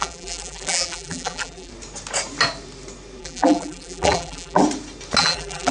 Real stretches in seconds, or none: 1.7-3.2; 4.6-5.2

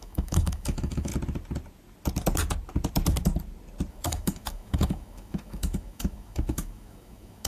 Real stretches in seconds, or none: 1.1-3.9